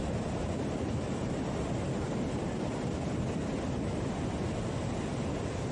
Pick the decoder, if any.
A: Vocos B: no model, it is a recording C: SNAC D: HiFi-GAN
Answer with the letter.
B